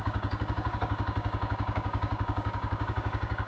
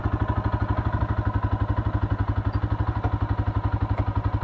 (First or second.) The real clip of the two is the second